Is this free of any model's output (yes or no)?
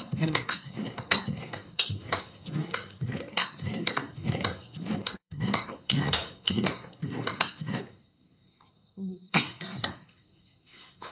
no